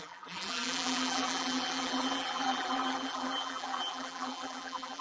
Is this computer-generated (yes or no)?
yes